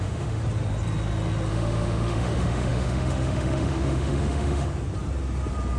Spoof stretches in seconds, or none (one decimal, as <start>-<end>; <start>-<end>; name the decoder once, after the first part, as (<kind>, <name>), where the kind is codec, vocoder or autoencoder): 0.0-0.4 (autoencoder, DAC-VAE); 1.5-4.7